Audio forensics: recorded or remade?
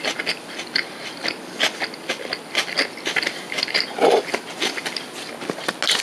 recorded